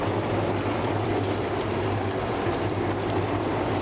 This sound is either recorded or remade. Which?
recorded